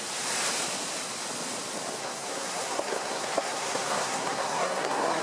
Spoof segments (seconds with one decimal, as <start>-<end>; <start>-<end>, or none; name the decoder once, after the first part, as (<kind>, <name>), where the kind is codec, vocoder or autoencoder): 2.0-5.2 (codec, SNAC)